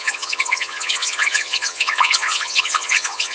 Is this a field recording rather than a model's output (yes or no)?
no